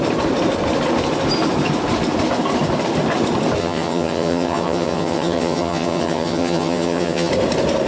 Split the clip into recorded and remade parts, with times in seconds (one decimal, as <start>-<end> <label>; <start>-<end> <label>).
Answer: 0.0-3.6 recorded; 3.6-7.3 remade; 7.3-7.9 recorded